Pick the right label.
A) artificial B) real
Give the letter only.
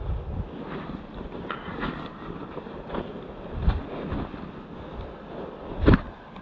B